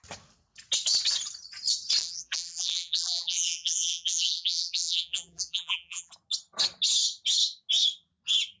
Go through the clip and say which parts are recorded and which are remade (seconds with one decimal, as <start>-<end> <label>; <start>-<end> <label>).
0.0-2.0 recorded; 2.0-6.1 remade; 6.1-8.6 recorded